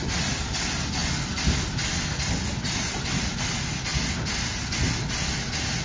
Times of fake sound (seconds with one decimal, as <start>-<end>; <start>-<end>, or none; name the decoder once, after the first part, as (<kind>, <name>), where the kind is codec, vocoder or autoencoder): none

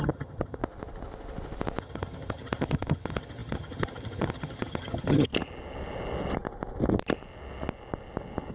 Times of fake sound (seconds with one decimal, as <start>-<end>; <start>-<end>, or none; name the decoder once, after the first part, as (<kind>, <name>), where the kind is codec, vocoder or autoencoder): 0.0-0.6 (vocoder, HiFi-GAN); 1.8-5.3

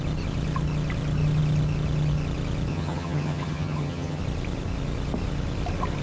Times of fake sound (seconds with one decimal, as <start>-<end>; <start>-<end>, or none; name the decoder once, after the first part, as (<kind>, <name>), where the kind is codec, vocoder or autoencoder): 2.7-4.2 (vocoder, HiFi-GAN)